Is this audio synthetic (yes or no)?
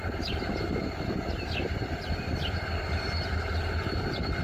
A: no